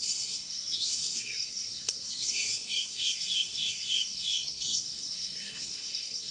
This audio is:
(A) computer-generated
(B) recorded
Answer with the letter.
A